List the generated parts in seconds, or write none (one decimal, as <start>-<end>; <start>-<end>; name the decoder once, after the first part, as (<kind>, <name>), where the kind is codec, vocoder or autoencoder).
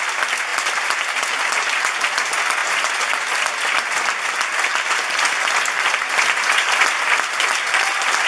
0.5-1.3 (vocoder, BigVGAN v2); 2.6-3.1